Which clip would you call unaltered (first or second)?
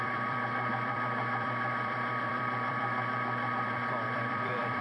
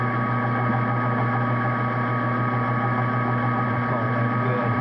second